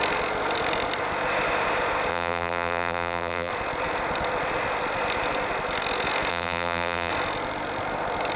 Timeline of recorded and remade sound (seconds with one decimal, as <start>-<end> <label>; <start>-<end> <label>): 0.0-2.1 recorded; 2.1-3.5 remade; 3.5-6.3 recorded; 6.3-7.1 remade; 7.1-8.4 recorded